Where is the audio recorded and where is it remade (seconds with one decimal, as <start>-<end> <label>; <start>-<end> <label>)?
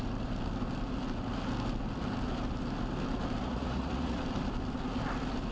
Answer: 0.0-3.4 recorded; 3.4-4.2 remade; 4.2-5.5 recorded